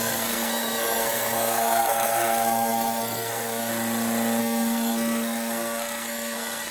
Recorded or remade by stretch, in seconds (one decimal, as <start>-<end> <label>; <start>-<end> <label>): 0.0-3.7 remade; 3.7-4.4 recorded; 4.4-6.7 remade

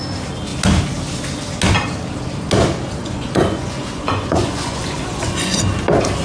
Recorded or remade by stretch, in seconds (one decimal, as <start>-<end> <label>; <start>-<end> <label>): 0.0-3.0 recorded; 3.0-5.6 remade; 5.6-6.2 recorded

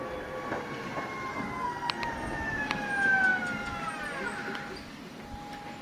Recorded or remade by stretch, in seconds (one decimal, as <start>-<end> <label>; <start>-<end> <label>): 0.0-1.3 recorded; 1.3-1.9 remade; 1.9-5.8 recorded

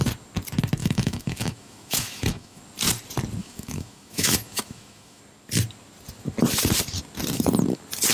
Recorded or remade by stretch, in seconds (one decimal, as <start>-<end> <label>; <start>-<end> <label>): 0.0-0.8 recorded; 0.8-2.6 remade; 2.6-3.4 recorded; 3.4-5.2 remade; 5.2-8.1 recorded

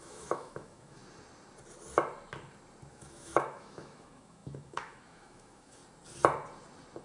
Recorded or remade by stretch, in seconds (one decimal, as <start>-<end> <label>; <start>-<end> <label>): 0.0-1.0 remade; 1.0-2.9 recorded; 2.9-5.8 remade; 5.8-7.0 recorded

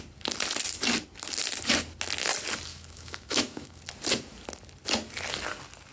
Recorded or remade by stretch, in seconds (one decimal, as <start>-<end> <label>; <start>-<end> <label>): 0.0-2.7 recorded; 2.7-3.8 remade; 3.8-5.9 recorded

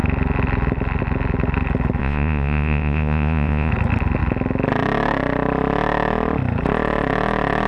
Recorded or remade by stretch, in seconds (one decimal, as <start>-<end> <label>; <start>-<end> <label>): 0.0-2.0 recorded; 2.0-3.7 remade; 3.7-7.7 recorded

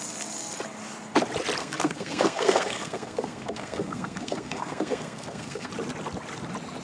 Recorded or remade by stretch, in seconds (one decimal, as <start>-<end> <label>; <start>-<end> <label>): 0.0-1.6 recorded; 1.6-5.7 remade; 5.7-6.8 recorded